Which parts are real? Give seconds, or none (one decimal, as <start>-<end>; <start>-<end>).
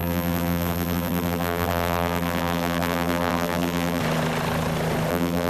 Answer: 4.0-5.1